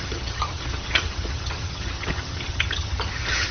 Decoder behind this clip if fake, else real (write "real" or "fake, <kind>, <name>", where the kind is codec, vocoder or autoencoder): fake, vocoder, HiFi-GAN